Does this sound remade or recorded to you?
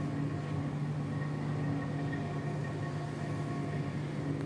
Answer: recorded